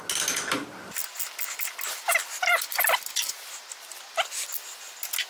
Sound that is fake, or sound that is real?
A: real